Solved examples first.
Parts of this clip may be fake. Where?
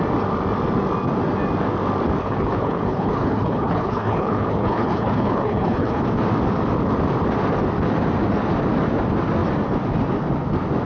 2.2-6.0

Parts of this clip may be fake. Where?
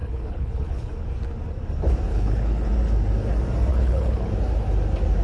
0.0-0.9; 2.1-2.7; 3.7-4.3